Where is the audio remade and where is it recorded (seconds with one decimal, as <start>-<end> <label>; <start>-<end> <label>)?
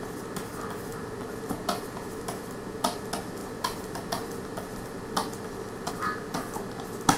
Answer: 0.0-0.9 recorded; 0.9-2.0 remade; 2.0-3.4 recorded; 3.4-5.9 remade; 5.9-7.2 recorded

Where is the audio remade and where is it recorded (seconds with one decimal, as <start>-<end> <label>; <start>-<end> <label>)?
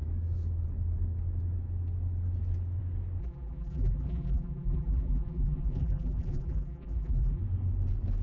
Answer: 0.0-3.2 recorded; 3.2-7.4 remade; 7.4-8.2 recorded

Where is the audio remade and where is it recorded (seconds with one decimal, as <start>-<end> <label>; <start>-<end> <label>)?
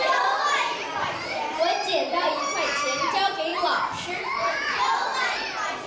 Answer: 0.0-3.5 remade; 3.5-4.1 recorded; 4.1-5.1 remade; 5.1-5.9 recorded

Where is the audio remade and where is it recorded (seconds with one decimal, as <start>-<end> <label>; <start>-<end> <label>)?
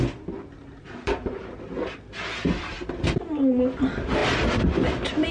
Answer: 0.0-5.3 recorded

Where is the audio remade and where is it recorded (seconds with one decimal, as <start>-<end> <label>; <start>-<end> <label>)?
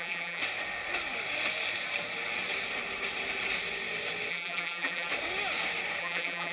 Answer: 0.0-0.4 remade; 0.4-4.3 recorded; 4.3-5.1 remade; 5.1-6.0 recorded; 6.0-6.5 remade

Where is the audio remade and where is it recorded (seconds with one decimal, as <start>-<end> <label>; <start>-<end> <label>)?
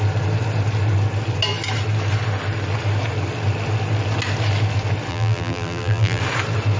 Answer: 0.0-5.1 recorded; 5.1-6.2 remade; 6.2-6.8 recorded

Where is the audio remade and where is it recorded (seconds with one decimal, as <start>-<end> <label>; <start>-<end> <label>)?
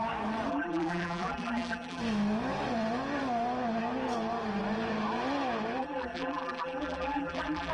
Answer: 0.0-0.5 recorded; 0.5-2.0 remade; 2.0-5.8 recorded; 5.8-7.7 remade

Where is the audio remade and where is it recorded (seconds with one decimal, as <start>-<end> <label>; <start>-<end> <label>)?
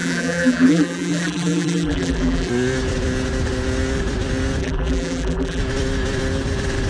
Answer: 0.0-2.5 remade; 2.5-4.6 recorded; 4.6-5.6 remade; 5.6-6.9 recorded